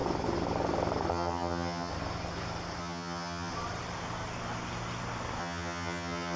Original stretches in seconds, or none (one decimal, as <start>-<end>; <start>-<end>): 0.0-1.1; 1.9-2.8; 3.5-5.4